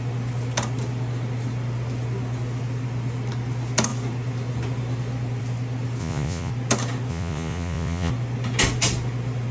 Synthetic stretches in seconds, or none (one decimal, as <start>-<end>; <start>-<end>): 6.0-6.5; 7.1-8.1